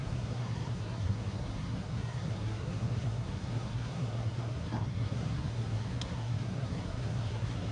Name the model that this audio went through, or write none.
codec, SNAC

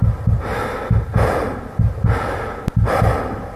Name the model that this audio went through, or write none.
none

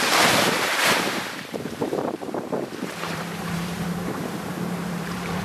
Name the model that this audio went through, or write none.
vocoder, BigVGAN v2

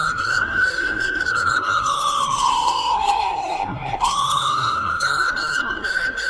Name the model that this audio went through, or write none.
codec, SNAC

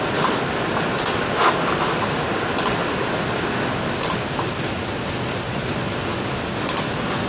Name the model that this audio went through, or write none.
none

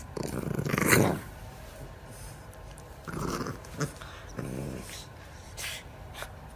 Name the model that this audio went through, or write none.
vocoder, BigVGAN v2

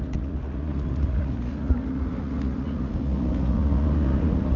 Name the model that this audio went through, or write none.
vocoder, Vocos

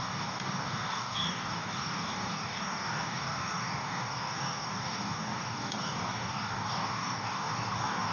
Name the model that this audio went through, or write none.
codec, DAC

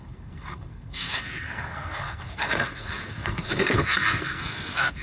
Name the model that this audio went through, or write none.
codec, SNAC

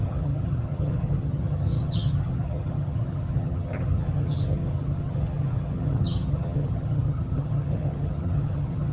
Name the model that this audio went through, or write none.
vocoder, HiFi-GAN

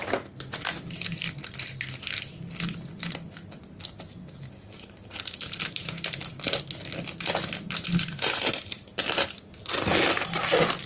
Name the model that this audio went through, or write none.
none